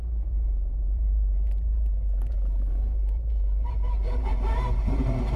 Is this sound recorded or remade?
remade